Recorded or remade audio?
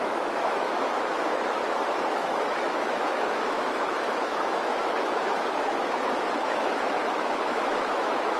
remade